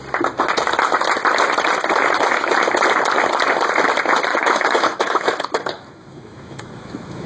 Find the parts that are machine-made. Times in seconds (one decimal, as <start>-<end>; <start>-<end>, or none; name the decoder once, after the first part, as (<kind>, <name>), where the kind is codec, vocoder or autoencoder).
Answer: 4.3-7.3 (autoencoder, DAC-VAE)